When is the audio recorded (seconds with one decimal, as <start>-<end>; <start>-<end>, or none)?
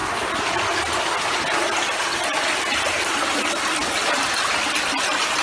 0.0-5.4